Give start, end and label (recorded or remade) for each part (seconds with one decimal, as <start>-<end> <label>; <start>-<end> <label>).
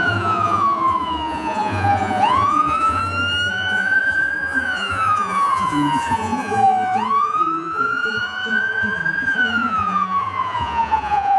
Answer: 0.0-3.0 remade; 3.0-3.5 recorded; 3.5-11.4 remade